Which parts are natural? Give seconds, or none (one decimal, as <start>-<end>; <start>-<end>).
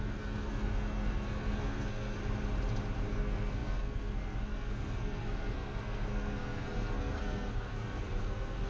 2.2-3.1